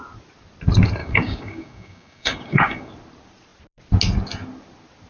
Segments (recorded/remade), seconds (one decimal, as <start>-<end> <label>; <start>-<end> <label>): 0.0-1.0 recorded; 1.0-2.9 remade; 2.9-5.1 recorded